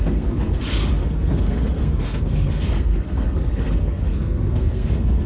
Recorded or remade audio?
remade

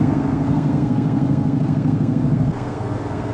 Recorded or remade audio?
remade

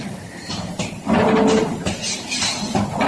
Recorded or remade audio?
recorded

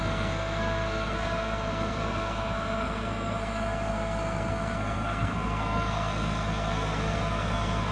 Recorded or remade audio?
remade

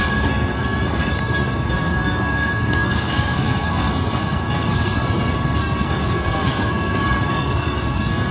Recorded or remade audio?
remade